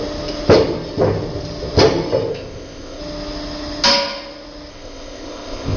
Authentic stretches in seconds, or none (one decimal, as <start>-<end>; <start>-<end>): 0.0-2.3; 3.0-4.7